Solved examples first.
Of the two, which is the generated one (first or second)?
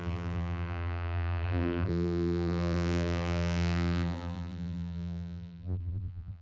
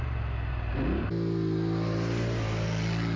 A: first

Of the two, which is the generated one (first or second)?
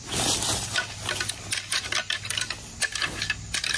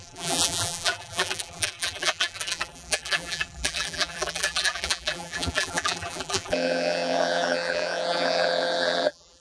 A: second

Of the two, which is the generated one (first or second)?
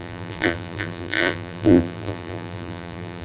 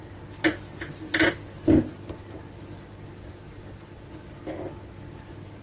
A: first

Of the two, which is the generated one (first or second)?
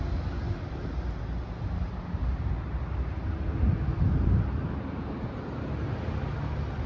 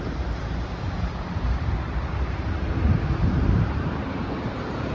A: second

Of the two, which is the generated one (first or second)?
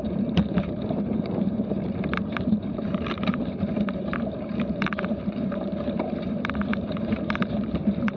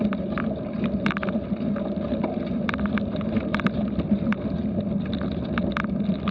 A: first